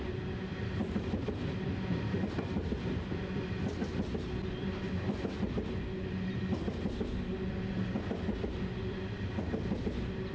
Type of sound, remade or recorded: recorded